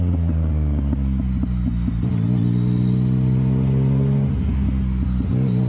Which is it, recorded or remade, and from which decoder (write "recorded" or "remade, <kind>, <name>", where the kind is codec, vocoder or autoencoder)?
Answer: recorded